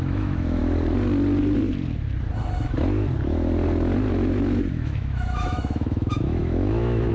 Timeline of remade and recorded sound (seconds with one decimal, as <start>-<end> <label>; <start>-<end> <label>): 0.0-0.6 remade; 0.6-4.7 recorded; 4.7-7.1 remade

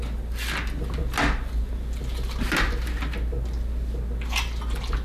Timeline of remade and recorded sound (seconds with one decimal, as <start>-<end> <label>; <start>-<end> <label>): 0.0-5.0 recorded

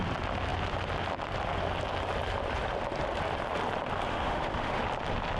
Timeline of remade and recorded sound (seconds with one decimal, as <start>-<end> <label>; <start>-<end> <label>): 0.0-4.1 recorded; 4.1-4.8 remade; 4.8-5.4 recorded

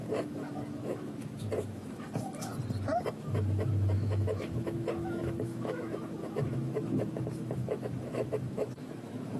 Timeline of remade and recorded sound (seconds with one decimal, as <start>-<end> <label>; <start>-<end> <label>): 0.0-2.5 remade; 2.5-3.1 recorded; 3.1-9.4 remade

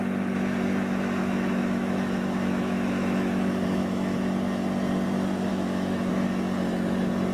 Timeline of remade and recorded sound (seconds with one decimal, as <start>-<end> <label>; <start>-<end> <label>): 0.0-1.2 recorded; 1.2-4.2 remade; 4.2-5.5 recorded; 5.5-6.1 remade; 6.1-7.3 recorded

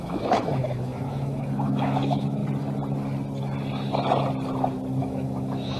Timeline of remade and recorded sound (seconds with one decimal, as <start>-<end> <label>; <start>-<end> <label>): 0.0-2.4 remade; 2.4-5.0 recorded; 5.0-5.8 remade

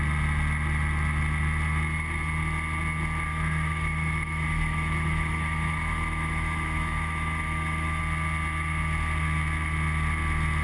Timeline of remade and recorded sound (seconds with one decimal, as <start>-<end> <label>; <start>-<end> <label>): 0.0-3.3 recorded; 3.3-8.0 remade; 8.0-10.6 recorded